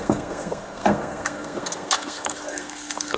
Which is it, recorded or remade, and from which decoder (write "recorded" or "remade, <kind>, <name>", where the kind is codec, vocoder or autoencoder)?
remade, codec, SNAC